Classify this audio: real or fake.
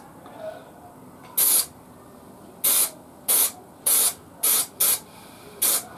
real